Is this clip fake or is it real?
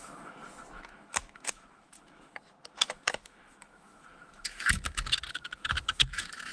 fake